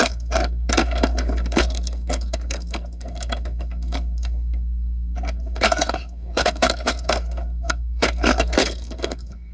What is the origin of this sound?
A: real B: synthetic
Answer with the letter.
B